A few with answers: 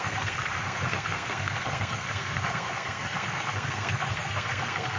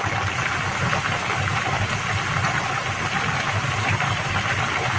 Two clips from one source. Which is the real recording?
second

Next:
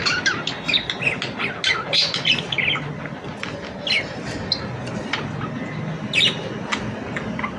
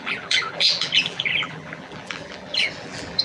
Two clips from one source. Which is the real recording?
first